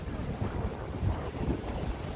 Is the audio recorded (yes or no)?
yes